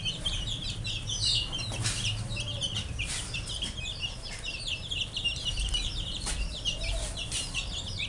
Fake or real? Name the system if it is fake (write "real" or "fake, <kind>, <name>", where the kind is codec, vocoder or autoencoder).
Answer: fake, vocoder, BigVGAN v2